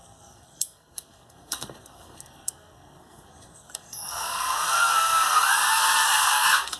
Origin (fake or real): fake